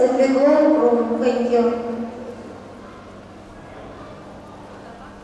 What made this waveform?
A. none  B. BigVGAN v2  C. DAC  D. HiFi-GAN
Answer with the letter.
A